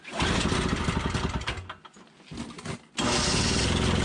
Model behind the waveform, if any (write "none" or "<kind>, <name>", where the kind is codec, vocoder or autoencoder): none